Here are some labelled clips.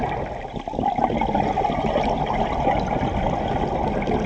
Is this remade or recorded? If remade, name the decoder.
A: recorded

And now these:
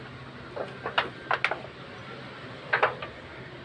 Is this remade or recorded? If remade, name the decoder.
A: recorded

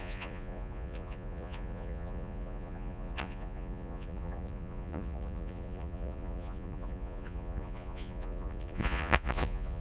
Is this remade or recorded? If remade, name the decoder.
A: remade, vocoder, Vocos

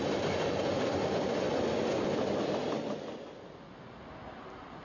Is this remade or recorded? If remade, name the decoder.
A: recorded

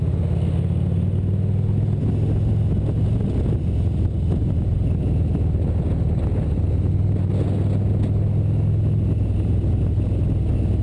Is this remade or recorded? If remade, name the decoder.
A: recorded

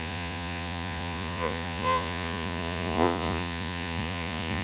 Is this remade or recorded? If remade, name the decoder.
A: remade, vocoder, Vocos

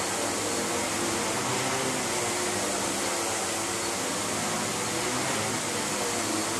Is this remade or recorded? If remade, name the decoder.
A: recorded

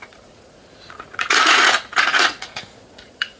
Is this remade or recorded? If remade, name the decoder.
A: remade, vocoder, Vocos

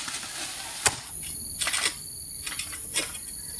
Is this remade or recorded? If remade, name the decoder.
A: recorded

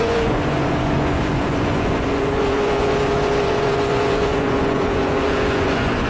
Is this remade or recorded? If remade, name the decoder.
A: remade, vocoder, Vocos